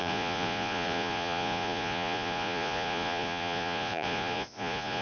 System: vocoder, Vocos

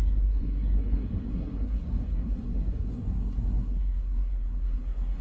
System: codec, SNAC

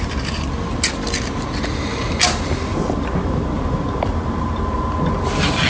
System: none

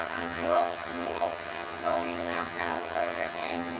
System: vocoder, HiFi-GAN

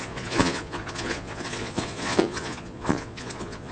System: vocoder, Vocos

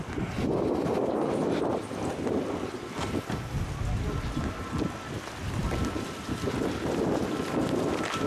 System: none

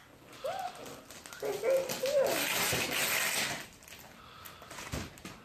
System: none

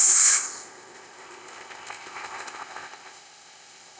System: codec, ZipCodec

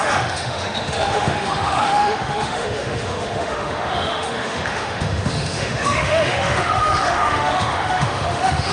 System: autoencoder, DAC-VAE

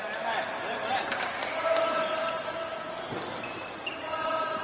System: none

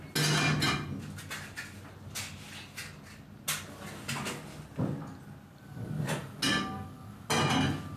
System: none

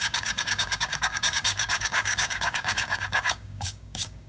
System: codec, DAC